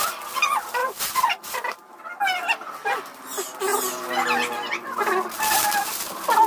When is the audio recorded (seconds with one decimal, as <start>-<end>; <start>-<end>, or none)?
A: 0.0-0.8; 1.9-6.5